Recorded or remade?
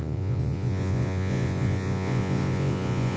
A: remade